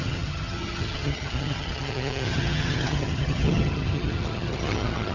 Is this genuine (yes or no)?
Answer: no